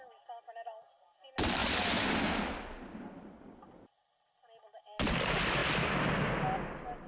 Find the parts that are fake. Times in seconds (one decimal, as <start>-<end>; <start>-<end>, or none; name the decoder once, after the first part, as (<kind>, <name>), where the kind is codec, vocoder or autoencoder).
none